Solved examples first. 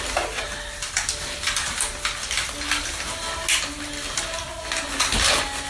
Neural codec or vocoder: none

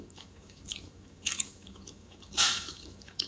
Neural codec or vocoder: autoencoder, DAC-VAE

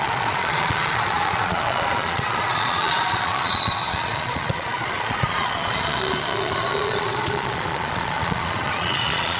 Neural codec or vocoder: vocoder, Vocos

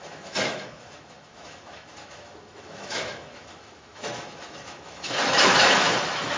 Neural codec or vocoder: autoencoder, DAC-VAE